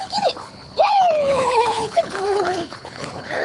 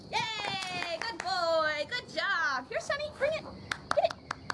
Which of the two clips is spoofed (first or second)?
first